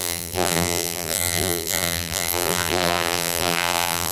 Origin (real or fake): fake